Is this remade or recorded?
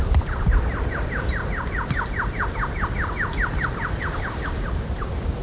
recorded